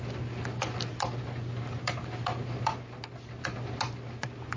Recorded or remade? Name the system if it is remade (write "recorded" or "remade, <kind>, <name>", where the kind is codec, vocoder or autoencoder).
recorded